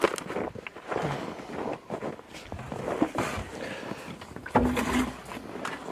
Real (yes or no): yes